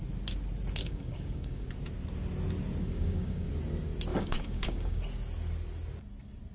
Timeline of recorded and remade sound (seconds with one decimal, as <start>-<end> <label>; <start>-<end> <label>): 0.0-0.8 recorded; 0.8-1.7 remade; 1.7-2.8 recorded; 2.8-3.5 remade; 3.5-4.1 recorded; 4.1-5.0 remade; 5.0-6.5 recorded